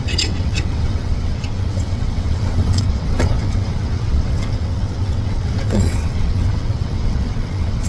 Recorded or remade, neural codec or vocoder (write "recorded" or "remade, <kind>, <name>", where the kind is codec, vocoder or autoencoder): remade, vocoder, WaveNeXt